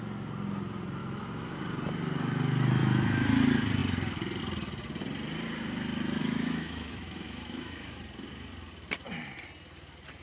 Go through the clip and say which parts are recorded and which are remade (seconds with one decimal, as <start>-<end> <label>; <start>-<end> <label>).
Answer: 0.0-1.0 recorded; 1.0-1.6 remade; 1.6-2.8 recorded; 2.8-3.3 remade; 3.3-6.2 recorded; 6.2-8.0 remade; 8.0-10.2 recorded